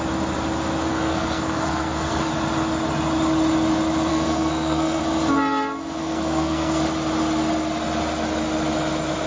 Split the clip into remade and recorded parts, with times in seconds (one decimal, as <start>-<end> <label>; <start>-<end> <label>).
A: 0.0-0.9 recorded; 0.9-2.3 remade; 2.3-4.1 recorded; 4.1-5.0 remade; 5.0-6.0 recorded; 6.0-6.8 remade; 6.8-9.3 recorded